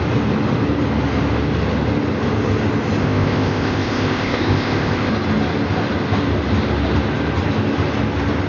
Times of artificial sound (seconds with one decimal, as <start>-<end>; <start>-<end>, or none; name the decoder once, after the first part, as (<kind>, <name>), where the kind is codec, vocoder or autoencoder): 3.0-5.1 (codec, ZipCodec)